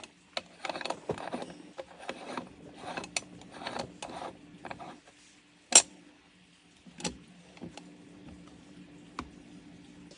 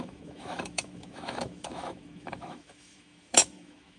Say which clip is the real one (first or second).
first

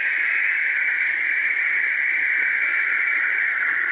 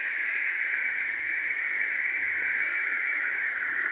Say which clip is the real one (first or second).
first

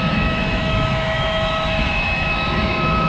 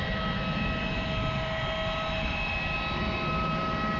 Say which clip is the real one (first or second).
second